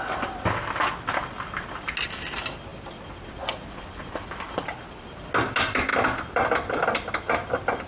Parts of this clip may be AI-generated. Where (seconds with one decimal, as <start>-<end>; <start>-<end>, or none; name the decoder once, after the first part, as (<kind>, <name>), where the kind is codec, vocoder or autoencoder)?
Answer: none